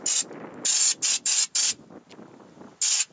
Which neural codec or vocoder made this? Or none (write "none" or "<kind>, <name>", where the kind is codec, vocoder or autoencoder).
none